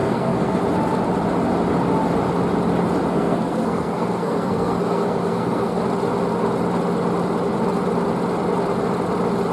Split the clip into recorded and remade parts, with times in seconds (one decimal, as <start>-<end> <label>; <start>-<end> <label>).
0.0-0.6 remade; 0.6-3.1 recorded; 3.1-5.8 remade; 5.8-9.5 recorded